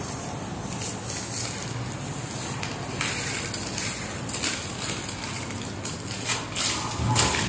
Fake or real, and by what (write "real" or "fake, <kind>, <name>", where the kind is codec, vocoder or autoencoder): real